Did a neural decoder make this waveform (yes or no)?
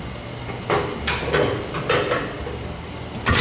no